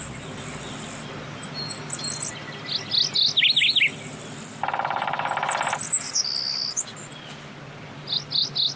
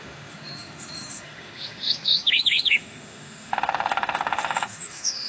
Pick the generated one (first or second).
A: second